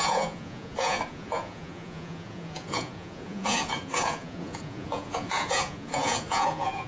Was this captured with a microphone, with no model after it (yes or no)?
no